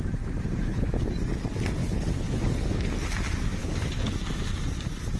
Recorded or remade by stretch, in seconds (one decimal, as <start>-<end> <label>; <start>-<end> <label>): 0.0-0.6 recorded; 0.6-1.1 remade; 1.1-1.8 recorded; 1.8-2.9 remade; 2.9-3.6 recorded; 3.6-4.1 remade; 4.1-5.2 recorded